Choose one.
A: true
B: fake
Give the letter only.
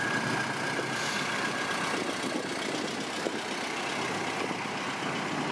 A